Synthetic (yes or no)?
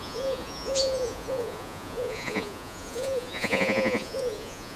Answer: yes